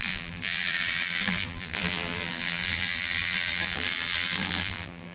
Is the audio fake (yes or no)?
yes